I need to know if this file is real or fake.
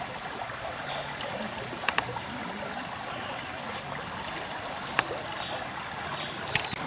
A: real